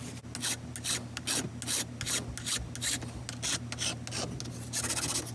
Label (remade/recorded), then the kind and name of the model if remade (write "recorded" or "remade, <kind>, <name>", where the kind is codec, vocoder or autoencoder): recorded